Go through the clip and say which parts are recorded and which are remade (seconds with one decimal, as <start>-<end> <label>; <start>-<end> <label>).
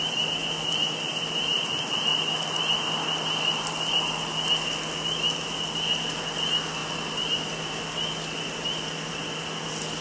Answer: 0.0-10.0 recorded